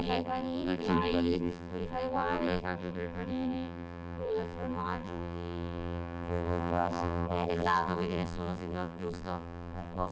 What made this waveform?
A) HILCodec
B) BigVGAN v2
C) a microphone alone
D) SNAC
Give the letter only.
B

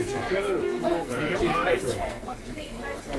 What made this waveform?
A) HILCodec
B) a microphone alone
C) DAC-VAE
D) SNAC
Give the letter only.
D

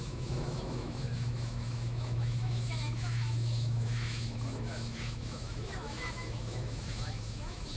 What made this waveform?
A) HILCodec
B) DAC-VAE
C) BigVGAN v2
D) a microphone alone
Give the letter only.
B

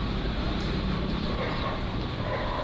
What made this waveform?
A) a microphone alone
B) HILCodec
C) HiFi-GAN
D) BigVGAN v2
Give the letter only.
D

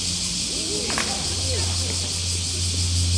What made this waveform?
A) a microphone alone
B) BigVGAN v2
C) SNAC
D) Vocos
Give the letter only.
A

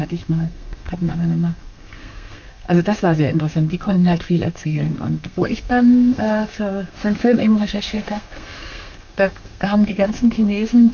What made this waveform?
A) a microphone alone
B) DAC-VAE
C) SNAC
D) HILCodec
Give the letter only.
C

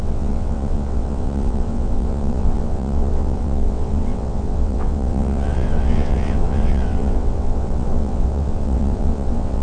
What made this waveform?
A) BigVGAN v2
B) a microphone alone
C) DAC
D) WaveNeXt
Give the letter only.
D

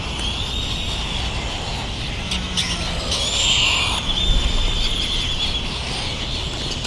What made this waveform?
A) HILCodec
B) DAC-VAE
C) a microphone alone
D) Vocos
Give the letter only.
C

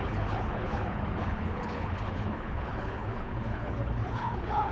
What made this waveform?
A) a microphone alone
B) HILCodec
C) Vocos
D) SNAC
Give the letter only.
B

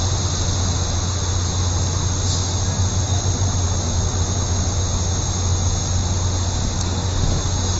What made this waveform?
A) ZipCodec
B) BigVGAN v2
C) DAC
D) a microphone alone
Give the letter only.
D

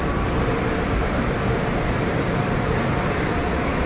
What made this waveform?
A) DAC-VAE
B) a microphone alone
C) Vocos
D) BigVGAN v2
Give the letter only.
D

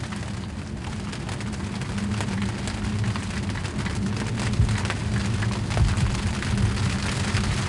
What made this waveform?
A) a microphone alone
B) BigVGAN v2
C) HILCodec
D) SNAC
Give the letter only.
A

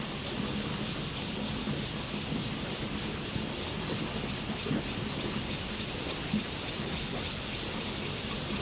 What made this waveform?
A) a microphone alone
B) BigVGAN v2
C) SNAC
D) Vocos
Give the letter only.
A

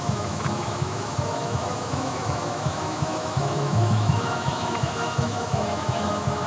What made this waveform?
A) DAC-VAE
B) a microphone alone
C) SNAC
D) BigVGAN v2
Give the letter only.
A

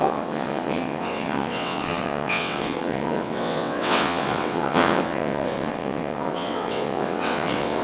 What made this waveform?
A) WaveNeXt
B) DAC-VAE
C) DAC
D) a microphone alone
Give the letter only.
A